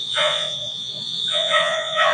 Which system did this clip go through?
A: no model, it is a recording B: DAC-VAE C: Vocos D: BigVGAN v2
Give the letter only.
C